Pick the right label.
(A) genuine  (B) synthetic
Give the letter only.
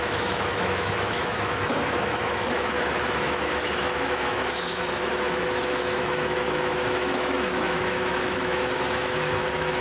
B